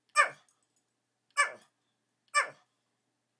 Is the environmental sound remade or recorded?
recorded